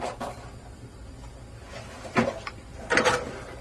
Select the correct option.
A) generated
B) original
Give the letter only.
A